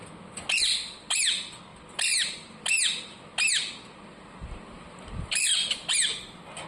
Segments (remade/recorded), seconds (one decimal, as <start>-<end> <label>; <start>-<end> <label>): 0.0-6.7 recorded